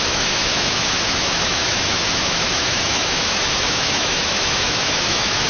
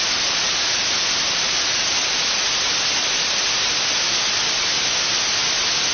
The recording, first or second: second